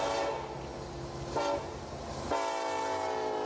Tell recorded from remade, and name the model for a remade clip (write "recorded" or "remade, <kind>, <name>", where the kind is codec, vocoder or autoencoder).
recorded